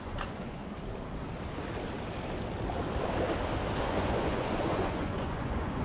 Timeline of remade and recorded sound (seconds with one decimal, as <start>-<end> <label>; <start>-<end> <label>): 0.0-0.6 remade; 0.6-3.8 recorded; 3.8-5.8 remade